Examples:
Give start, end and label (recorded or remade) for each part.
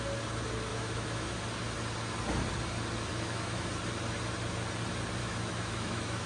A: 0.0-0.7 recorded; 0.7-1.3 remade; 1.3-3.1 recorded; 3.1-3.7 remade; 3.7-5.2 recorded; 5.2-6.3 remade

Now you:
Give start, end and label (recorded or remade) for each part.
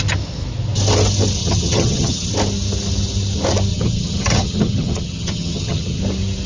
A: 0.0-1.4 recorded; 1.4-2.3 remade; 2.3-3.7 recorded; 3.7-6.0 remade; 6.0-6.5 recorded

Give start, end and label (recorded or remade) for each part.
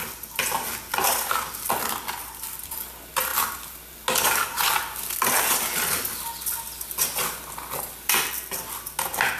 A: 0.0-9.4 recorded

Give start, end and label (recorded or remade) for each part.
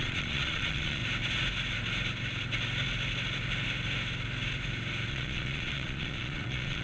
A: 0.0-1.0 remade; 1.0-5.1 recorded; 5.1-6.8 remade